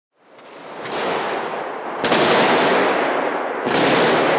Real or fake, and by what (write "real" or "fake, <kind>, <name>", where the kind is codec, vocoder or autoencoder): real